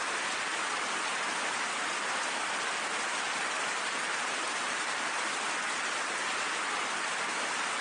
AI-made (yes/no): no